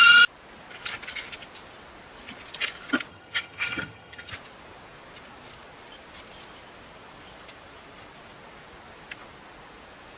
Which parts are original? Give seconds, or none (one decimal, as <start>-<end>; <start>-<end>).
0.0-3.1; 4.3-10.2